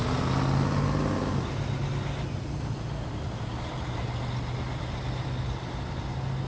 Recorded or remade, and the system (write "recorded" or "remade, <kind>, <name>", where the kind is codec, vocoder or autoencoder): recorded